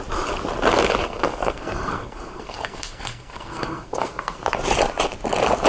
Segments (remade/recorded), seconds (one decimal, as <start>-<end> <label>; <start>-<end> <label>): 0.0-1.0 recorded; 1.0-4.4 remade; 4.4-5.7 recorded